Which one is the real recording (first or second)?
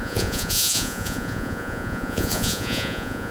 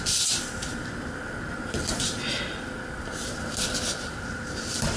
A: second